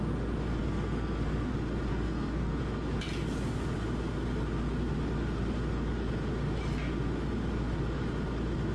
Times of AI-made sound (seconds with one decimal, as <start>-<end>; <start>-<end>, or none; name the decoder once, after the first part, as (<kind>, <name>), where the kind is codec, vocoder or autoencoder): 0.6-1.5 (codec, SNAC); 1.9-2.6